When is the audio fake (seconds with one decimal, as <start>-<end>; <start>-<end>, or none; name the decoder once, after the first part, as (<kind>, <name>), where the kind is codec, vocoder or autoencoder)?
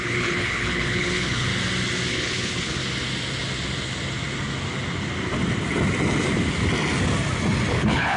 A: 0.0-1.5 (codec, HILCodec); 2.1-2.8; 7.7-8.2